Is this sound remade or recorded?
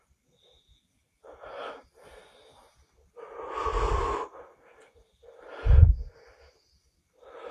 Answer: recorded